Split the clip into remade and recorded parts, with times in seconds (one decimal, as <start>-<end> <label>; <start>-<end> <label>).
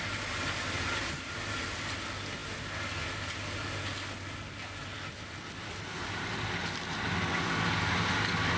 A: 0.0-8.6 recorded